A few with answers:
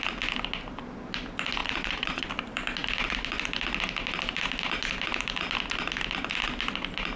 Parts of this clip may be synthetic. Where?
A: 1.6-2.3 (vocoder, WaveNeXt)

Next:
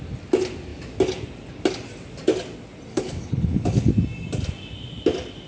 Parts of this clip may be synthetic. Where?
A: 2.9-3.9 (codec, HILCodec)

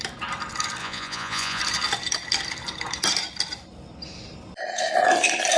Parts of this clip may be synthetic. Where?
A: 0.8-1.6 (vocoder, Vocos)

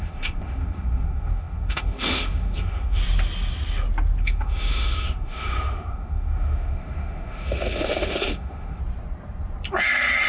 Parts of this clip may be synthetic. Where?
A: 0.0-3.0 (autoencoder, DAC-VAE); 4.2-8.8

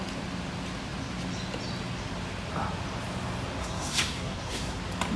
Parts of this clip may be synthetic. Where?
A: 3.6-4.8 (codec, SNAC)